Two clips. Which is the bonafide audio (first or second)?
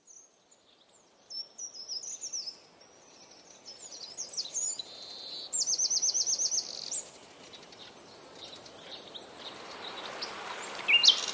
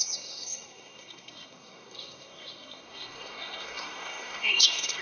first